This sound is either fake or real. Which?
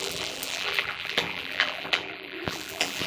fake